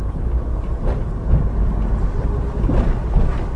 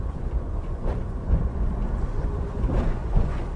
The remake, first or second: second